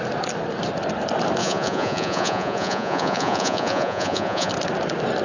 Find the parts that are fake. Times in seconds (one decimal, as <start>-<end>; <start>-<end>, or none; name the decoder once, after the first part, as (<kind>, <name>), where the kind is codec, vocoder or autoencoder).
1.4-4.5 (vocoder, Vocos)